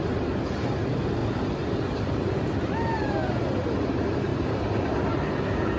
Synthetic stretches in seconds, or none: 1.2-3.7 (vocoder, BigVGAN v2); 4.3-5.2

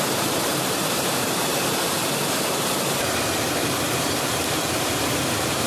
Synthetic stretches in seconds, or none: 0.0-1.5 (vocoder, BigVGAN v2); 4.7-5.7

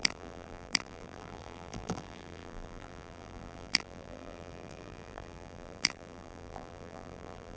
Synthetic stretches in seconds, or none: 0.0-7.6 (vocoder, BigVGAN v2)

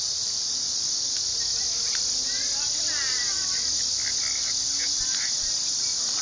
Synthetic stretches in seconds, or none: 0.0-1.3 (vocoder, BigVGAN v2); 5.0-6.2

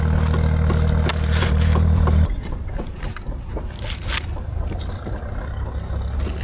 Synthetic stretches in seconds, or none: 1.1-4.9 (vocoder, BigVGAN v2)